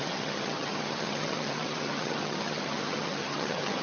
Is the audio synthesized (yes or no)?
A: yes